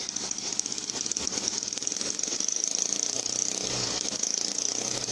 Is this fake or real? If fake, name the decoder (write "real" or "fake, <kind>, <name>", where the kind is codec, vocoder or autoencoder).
fake, codec, DAC